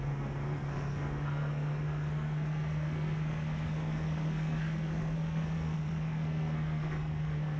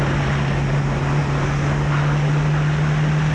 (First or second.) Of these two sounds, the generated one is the first